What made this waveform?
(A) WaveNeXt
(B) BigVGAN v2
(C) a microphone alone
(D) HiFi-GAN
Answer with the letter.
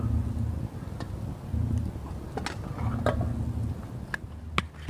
C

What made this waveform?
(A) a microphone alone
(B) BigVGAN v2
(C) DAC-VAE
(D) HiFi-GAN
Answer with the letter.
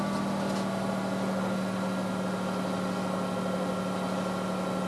A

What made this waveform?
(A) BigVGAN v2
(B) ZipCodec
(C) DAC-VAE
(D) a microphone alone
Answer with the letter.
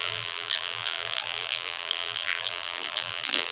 A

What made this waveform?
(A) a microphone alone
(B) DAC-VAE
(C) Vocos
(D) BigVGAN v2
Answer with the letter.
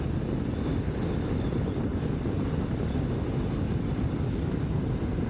A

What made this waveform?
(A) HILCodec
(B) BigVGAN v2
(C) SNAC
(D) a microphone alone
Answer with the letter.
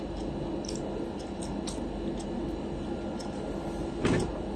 D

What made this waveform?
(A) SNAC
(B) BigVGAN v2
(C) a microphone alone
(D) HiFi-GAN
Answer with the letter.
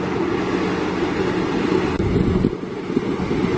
C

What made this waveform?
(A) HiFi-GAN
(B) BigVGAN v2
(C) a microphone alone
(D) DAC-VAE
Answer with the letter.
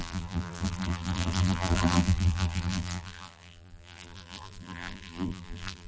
B